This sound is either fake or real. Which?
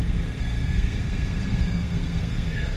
fake